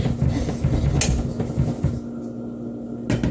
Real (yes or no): yes